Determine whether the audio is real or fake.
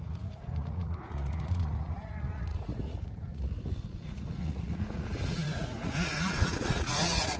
fake